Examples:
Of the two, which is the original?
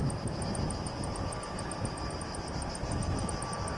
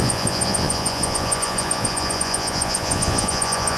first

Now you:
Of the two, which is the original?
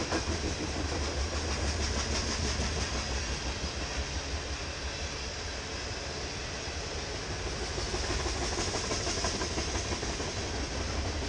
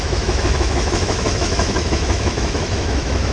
first